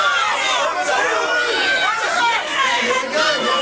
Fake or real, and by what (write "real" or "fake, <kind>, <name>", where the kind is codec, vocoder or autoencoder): real